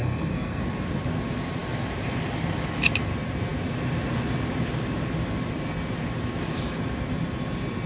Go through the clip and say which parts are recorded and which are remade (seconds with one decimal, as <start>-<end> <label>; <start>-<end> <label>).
0.0-0.6 remade; 0.6-7.9 recorded